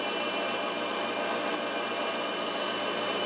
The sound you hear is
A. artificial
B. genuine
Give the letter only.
B